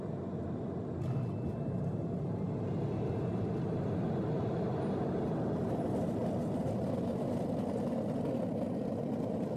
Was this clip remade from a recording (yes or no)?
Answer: no